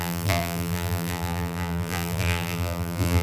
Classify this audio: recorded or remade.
remade